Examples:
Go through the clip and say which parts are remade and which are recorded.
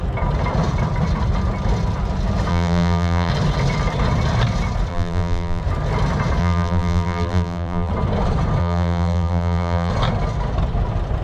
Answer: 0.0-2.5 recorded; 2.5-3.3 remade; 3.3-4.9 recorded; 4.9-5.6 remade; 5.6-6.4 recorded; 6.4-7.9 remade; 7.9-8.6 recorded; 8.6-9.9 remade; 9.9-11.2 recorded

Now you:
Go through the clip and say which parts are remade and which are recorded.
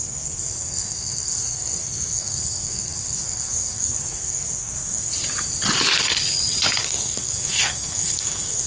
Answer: 0.0-5.1 remade; 5.1-6.8 recorded; 6.8-8.7 remade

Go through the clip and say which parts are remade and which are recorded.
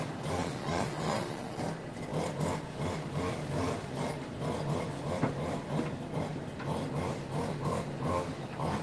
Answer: 0.0-0.4 recorded; 0.4-1.6 remade; 1.6-8.8 recorded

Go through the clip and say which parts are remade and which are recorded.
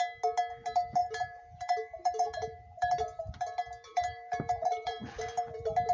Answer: 0.0-1.0 recorded; 1.0-2.9 remade; 2.9-3.9 recorded; 3.9-5.0 remade; 5.0-5.9 recorded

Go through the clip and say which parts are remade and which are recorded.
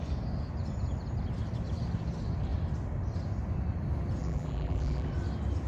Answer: 0.0-4.2 recorded; 4.2-5.1 remade; 5.1-5.7 recorded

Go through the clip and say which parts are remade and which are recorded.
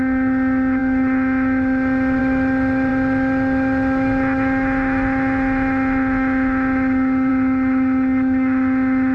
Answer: 0.0-9.1 recorded